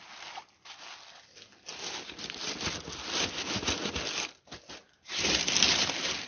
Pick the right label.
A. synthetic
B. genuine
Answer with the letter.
B